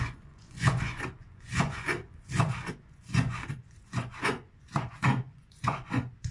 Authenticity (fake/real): fake